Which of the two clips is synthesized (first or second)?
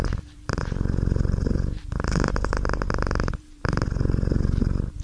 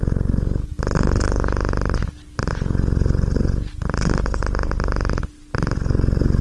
first